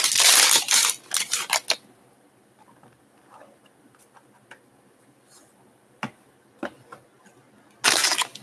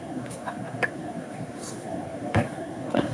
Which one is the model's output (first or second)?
second